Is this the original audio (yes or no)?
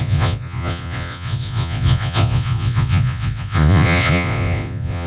no